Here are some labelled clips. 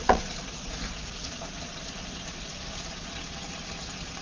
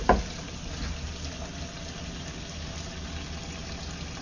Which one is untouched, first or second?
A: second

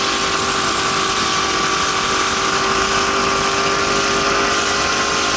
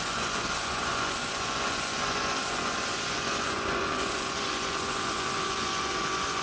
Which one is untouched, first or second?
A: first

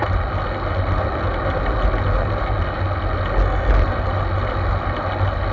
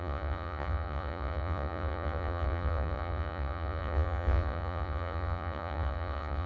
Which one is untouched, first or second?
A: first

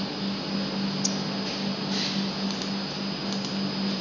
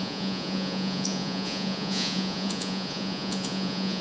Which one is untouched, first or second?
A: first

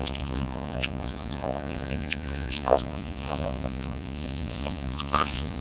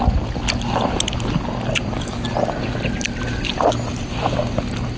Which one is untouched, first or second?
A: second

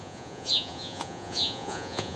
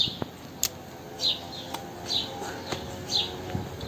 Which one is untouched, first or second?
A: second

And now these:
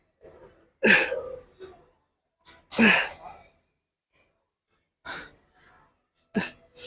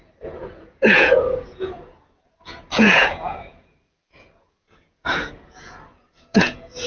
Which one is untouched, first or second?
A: first